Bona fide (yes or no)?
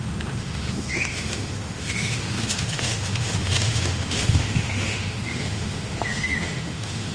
no